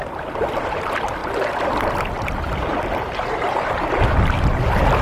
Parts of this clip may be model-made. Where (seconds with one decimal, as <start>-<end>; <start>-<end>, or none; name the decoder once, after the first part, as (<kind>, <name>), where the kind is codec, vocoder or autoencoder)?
none